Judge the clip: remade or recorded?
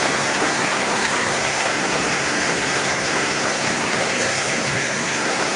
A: remade